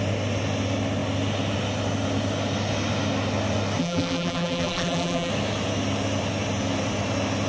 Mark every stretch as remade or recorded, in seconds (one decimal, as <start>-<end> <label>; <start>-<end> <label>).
0.0-3.8 recorded; 3.8-5.3 remade; 5.3-7.5 recorded